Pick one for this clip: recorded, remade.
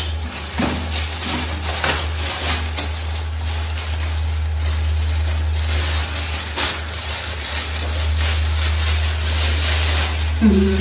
recorded